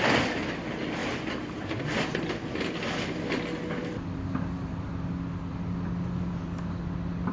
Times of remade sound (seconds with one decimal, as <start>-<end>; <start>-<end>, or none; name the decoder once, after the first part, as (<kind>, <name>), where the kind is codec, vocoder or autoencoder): 1.0-2.8 (vocoder, BigVGAN v2); 3.8-4.9

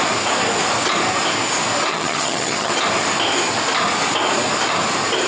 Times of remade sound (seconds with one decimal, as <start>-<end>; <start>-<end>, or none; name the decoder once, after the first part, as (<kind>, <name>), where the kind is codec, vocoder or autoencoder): 1.9-2.7 (vocoder, HiFi-GAN)